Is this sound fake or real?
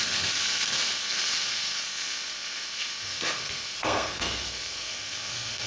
fake